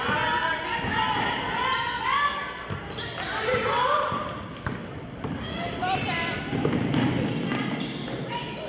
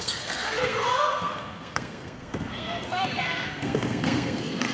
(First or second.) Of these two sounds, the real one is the first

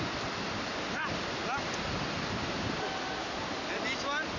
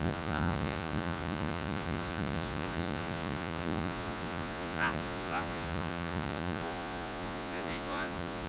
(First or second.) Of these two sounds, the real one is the first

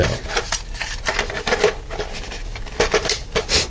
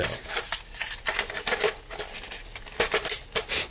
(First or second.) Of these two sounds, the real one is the second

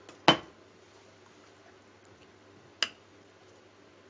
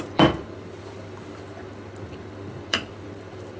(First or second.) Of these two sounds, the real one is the first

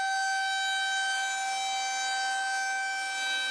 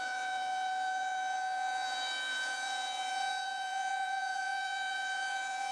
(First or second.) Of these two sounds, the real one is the first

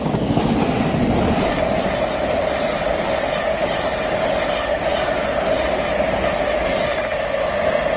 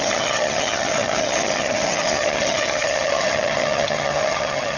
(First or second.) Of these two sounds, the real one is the first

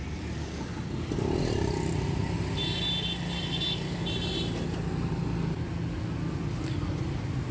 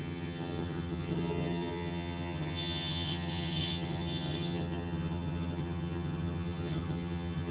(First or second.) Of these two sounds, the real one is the first